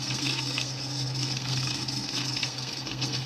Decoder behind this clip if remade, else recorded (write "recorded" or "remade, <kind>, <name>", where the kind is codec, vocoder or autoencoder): remade, codec, SNAC